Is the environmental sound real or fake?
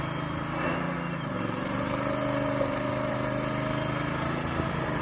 real